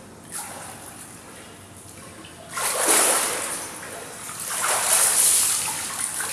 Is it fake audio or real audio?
real